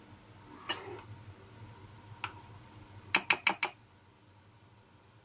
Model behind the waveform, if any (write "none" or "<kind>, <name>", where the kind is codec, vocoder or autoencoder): none